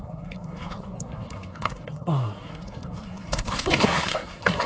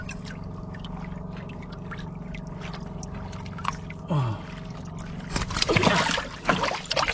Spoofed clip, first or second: first